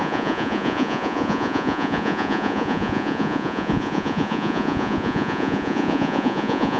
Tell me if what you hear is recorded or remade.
remade